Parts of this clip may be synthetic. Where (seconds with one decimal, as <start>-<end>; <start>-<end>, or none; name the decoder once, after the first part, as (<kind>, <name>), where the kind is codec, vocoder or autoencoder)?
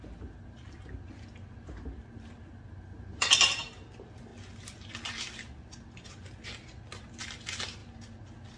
none